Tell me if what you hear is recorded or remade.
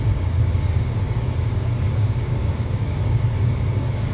remade